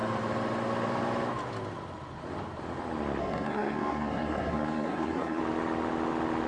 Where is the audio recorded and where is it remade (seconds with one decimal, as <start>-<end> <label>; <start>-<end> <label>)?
0.0-3.2 recorded; 3.2-5.4 remade; 5.4-6.5 recorded